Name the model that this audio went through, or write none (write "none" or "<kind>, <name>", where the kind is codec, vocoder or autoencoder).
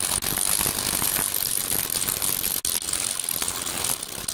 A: none